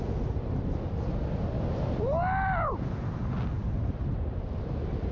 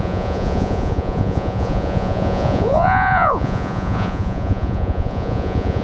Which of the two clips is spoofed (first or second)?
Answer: second